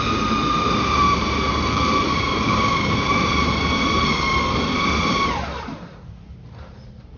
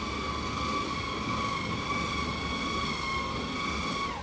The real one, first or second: second